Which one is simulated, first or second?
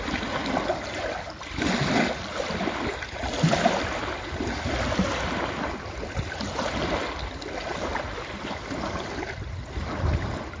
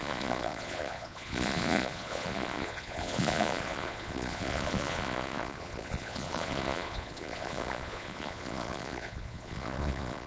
second